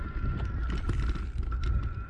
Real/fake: real